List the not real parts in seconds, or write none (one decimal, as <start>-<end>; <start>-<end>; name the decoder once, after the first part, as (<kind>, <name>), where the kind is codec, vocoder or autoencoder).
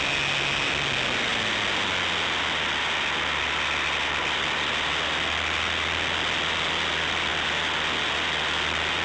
none